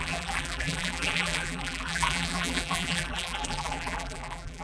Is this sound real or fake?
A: fake